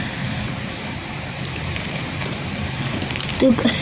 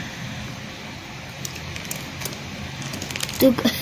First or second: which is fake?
first